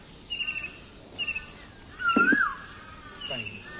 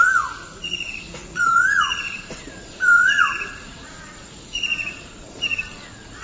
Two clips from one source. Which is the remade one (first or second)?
second